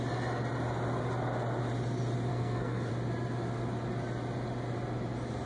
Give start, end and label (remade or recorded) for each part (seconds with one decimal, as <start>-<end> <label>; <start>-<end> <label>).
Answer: 0.0-2.3 recorded; 2.3-2.9 remade; 2.9-5.5 recorded